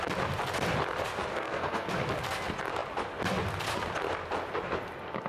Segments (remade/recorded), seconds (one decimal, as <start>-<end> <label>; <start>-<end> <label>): 0.0-1.3 recorded; 1.3-1.9 remade; 1.9-5.3 recorded

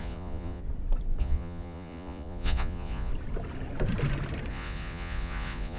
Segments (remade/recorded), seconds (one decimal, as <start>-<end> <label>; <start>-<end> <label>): 0.0-0.6 remade; 0.6-1.2 recorded; 1.2-3.1 remade; 3.1-4.5 recorded; 4.5-5.8 remade

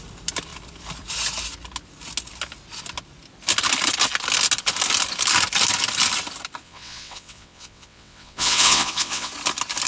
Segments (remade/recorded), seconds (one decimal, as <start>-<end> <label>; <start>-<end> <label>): 0.0-6.6 recorded; 6.6-9.3 remade; 9.3-9.9 recorded

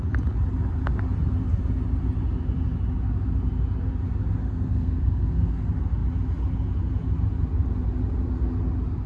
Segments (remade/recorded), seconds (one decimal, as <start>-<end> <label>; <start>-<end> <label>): 0.0-4.4 recorded; 4.4-5.5 remade; 5.5-9.1 recorded

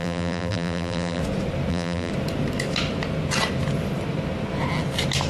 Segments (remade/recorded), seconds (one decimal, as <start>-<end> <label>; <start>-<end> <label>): 0.0-1.2 remade; 1.2-1.7 recorded; 1.7-2.1 remade; 2.1-5.3 recorded

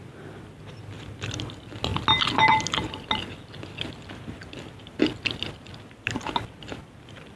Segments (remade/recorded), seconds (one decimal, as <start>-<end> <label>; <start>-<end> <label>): 0.0-7.4 recorded

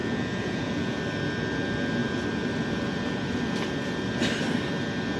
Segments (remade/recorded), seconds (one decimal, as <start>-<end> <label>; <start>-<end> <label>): 0.0-1.0 remade; 1.0-5.2 recorded